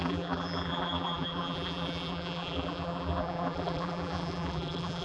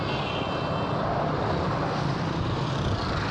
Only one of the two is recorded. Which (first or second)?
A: second